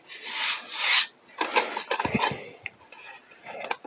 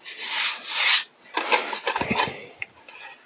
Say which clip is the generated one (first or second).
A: second